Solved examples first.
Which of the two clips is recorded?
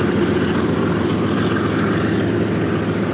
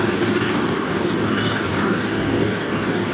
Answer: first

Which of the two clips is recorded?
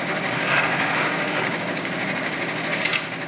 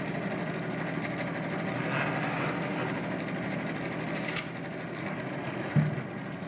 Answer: second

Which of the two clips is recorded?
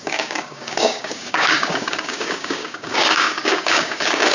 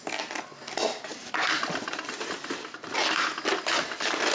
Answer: second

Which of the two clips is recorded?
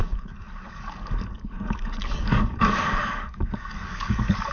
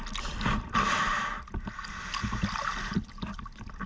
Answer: second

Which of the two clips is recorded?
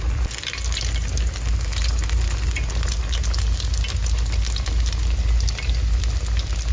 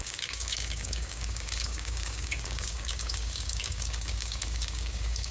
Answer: first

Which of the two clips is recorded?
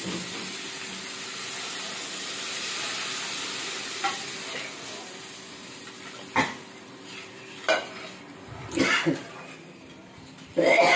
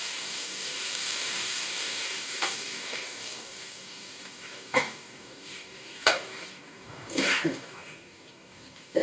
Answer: first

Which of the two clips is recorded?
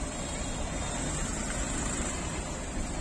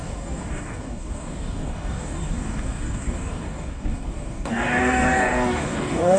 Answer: first